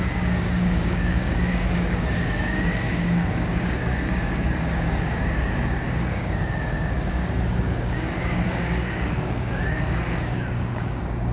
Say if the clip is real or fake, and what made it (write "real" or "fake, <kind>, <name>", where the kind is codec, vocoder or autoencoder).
fake, codec, DAC